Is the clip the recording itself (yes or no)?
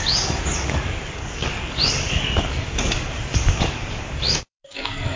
no